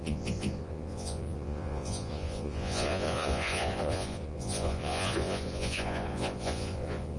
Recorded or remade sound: remade